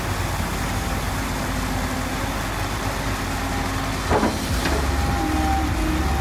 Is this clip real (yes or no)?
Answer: yes